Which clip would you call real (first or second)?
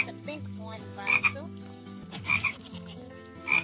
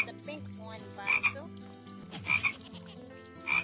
second